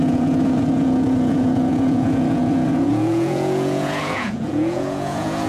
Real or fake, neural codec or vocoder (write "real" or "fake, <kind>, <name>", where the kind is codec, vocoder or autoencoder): fake, vocoder, Vocos